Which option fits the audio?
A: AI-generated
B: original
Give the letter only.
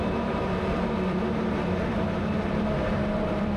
A